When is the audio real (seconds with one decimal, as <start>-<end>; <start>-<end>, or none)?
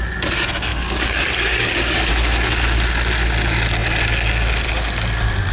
0.0-0.7; 2.1-5.5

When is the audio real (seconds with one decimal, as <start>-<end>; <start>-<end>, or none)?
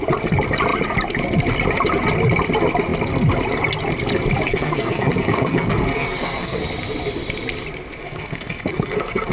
0.0-4.5; 6.6-8.0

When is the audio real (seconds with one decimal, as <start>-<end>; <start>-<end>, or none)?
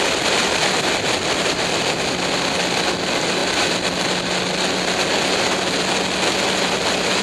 0.0-7.2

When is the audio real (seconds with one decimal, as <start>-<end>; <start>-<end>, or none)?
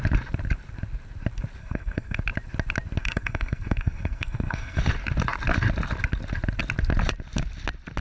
0.0-1.6; 2.2-3.0; 4.8-8.0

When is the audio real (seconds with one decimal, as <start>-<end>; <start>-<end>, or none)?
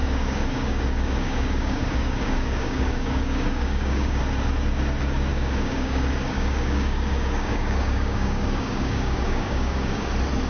4.2-5.3; 10.1-10.5